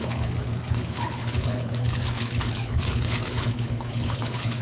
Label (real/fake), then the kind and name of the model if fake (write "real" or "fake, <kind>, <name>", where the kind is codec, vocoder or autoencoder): fake, codec, HILCodec